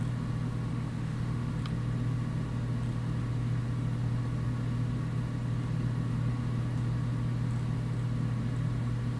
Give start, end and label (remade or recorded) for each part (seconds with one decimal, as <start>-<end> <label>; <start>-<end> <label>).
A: 0.0-0.7 recorded; 0.7-1.5 remade; 1.5-9.2 recorded